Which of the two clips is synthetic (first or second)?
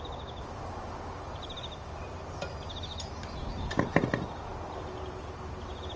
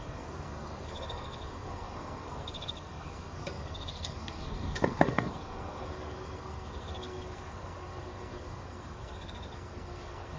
second